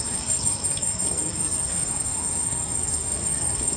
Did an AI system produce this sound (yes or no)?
yes